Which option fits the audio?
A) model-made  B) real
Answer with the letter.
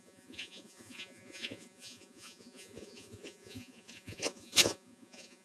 A